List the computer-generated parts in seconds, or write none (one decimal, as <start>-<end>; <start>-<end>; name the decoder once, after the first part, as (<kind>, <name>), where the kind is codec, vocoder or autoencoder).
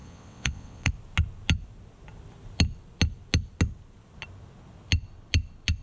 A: 0.0-0.9 (vocoder, WaveNeXt)